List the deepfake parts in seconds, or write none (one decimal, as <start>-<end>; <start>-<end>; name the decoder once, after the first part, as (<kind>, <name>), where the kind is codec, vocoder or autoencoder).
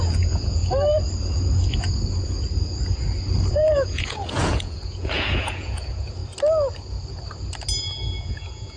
0.0-0.6 (vocoder, Vocos); 3.5-6.2; 8.2-8.8